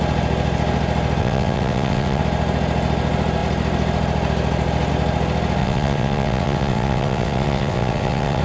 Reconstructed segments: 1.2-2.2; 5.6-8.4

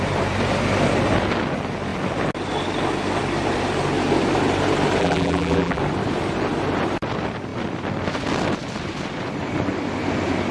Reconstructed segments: 5.0-5.8

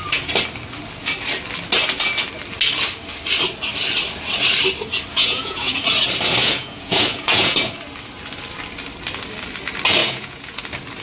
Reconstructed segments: 5.1-5.7; 6.4-7.7; 10.0-10.6

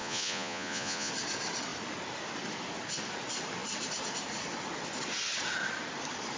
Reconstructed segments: 0.0-1.1